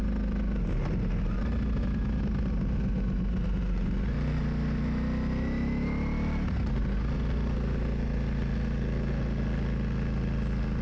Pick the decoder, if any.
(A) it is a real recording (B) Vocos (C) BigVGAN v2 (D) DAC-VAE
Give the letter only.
A